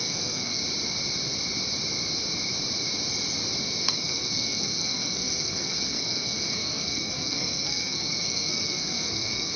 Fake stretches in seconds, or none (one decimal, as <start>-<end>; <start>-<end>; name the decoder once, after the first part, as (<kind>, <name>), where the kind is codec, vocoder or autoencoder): 0.0-0.6 (codec, SNAC); 3.8-9.6